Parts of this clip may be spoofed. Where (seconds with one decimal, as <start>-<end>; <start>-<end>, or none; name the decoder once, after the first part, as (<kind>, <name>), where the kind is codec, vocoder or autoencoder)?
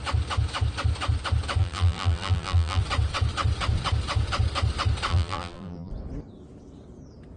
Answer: 1.6-2.8 (vocoder, BigVGAN v2); 5.1-5.9